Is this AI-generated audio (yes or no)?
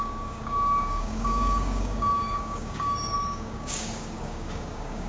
yes